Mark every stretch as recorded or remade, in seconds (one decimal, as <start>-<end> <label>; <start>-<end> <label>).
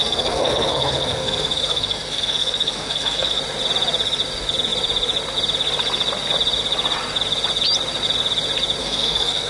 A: 0.0-3.4 remade; 3.4-8.8 recorded; 8.8-9.5 remade